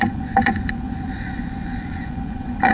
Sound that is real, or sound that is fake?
fake